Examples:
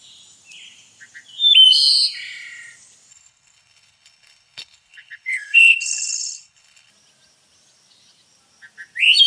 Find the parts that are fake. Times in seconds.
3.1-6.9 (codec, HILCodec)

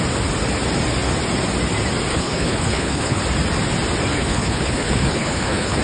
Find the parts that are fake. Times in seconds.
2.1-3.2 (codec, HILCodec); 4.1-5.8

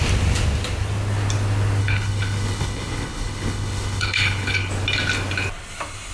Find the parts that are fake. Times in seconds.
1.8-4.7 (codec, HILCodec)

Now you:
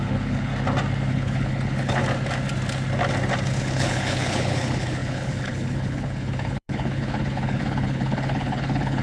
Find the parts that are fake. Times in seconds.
0.0-0.5 (codec, HILCodec); 1.1-2.0; 3.6-9.0

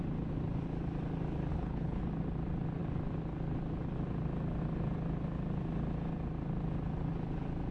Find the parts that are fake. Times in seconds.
1.5-2.1 (codec, HILCodec)

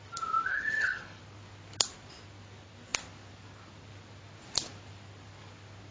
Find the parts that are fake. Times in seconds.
0.5-1.2 (codec, HILCodec)

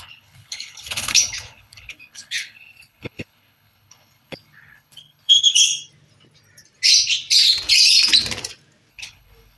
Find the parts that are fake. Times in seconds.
0.0-5.7 (codec, HILCodec); 8.9-9.6

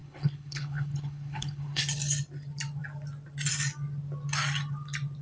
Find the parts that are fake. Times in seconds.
0.0-1.8 (codec, HILCodec)